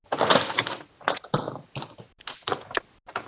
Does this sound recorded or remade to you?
recorded